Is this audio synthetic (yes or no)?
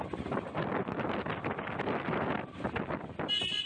no